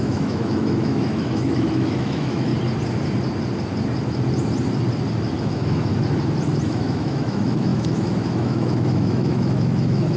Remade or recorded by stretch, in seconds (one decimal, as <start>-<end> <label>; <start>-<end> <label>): 0.0-2.5 remade; 2.5-5.4 recorded; 5.4-5.9 remade; 5.9-6.7 recorded; 6.7-10.2 remade